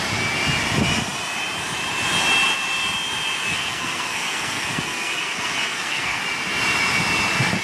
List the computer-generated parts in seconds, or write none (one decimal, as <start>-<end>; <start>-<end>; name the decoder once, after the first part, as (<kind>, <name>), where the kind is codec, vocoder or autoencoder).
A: 3.5-6.2 (codec, SNAC)